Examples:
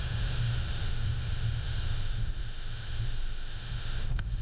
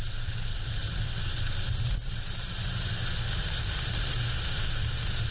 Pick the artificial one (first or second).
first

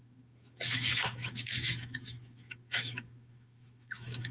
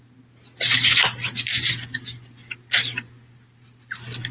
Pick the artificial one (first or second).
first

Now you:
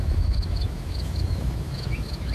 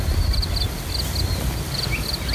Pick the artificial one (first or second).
first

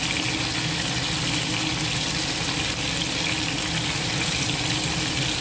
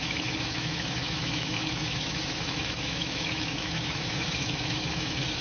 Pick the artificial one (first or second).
second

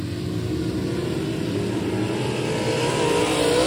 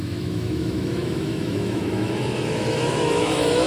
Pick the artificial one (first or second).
second